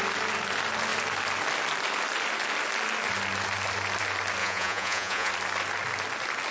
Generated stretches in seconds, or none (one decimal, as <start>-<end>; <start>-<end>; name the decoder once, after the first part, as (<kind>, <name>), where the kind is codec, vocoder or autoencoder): 4.4-5.3 (vocoder, Vocos)